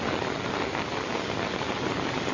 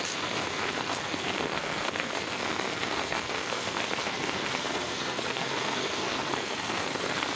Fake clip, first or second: second